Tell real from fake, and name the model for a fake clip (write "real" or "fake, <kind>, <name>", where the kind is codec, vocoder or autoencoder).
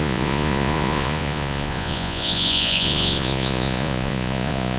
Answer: fake, vocoder, Vocos